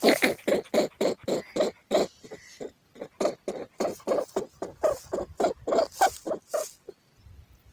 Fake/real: real